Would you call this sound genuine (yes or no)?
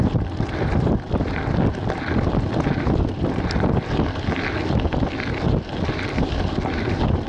yes